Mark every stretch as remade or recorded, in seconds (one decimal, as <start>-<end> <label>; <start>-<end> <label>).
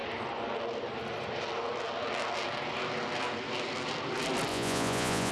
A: 0.0-4.5 recorded; 4.5-5.3 remade